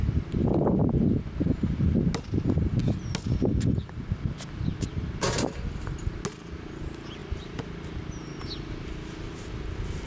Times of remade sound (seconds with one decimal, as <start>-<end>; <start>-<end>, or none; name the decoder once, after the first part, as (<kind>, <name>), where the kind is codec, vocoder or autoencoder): none